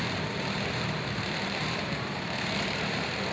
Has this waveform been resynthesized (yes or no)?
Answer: yes